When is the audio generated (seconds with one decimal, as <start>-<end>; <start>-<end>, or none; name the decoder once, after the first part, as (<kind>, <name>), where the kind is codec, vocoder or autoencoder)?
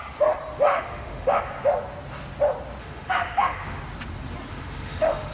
0.7-1.4 (autoencoder, DAC-VAE); 2.8-3.8; 4.5-5.3